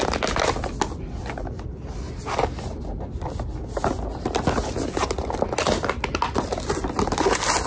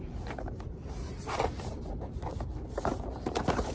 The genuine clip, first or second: first